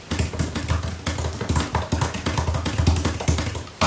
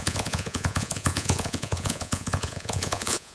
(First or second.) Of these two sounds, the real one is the first